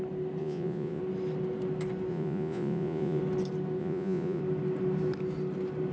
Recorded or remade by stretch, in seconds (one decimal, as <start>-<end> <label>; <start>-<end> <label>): 0.0-0.4 recorded; 0.4-1.0 remade; 1.0-2.1 recorded; 2.1-3.2 remade; 3.2-3.8 recorded; 3.8-4.4 remade; 4.4-5.9 recorded